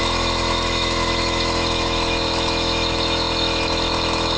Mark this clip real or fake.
fake